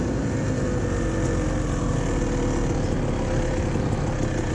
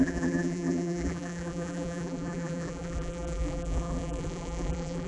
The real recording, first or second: first